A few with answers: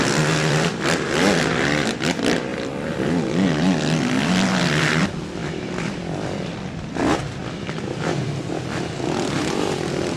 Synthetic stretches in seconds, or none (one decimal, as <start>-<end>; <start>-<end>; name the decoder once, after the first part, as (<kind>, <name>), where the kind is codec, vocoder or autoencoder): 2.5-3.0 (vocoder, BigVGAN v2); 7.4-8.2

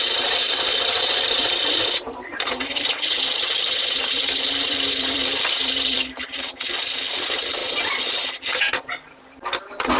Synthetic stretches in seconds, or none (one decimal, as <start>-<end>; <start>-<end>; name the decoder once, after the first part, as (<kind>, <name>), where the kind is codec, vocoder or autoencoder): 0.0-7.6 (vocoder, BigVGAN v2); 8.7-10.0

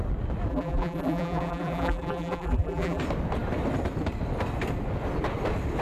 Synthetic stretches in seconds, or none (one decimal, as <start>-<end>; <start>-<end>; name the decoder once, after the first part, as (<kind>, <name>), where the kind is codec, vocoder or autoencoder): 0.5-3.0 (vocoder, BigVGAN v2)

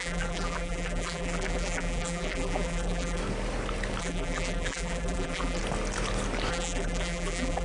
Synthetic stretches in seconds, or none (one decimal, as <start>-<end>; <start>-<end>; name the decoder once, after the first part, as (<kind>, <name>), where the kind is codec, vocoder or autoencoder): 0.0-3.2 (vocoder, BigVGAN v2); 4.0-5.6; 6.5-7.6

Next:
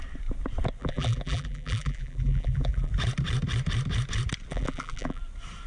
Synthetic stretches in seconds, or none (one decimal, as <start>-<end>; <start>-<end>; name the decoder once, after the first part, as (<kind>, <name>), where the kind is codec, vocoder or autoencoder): 0.8-2.9 (vocoder, BigVGAN v2); 4.5-5.2

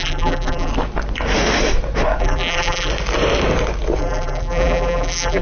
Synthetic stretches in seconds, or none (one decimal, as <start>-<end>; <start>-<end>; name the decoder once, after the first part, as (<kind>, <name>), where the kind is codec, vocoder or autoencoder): 0.0-0.7 (vocoder, BigVGAN v2); 2.2-2.9; 4.0-5.4